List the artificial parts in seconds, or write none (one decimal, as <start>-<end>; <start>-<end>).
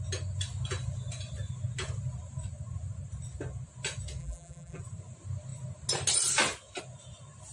4.2-4.8